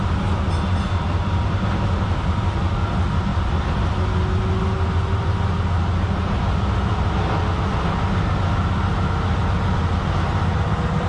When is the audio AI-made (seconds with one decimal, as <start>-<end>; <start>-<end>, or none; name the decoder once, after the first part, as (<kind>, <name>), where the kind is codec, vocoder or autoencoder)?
3.3-3.8 (vocoder, BigVGAN v2)